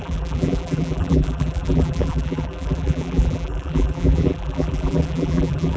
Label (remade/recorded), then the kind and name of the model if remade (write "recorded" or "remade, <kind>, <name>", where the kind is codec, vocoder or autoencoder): remade, vocoder, BigVGAN v2